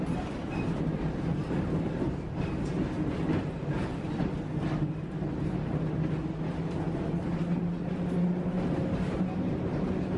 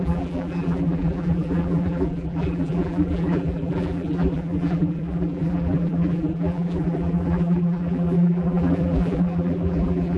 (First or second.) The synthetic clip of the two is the second